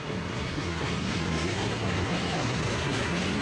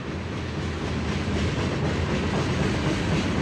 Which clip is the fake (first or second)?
first